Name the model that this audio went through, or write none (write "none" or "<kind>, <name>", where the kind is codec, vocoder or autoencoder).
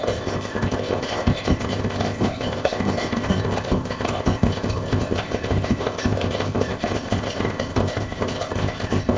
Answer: codec, ZipCodec